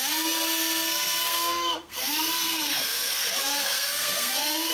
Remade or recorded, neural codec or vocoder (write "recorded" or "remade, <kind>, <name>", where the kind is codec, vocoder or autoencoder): remade, codec, SNAC